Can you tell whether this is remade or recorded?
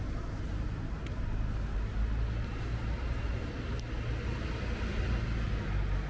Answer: recorded